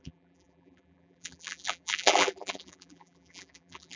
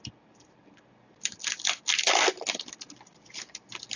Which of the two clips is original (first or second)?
second